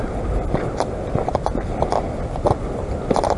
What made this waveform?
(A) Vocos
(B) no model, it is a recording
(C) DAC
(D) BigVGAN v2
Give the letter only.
B